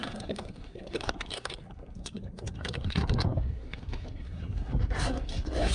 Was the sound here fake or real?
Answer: fake